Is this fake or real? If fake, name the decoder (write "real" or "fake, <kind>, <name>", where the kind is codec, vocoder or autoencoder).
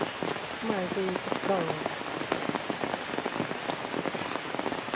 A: real